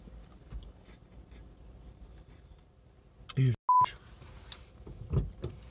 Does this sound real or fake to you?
real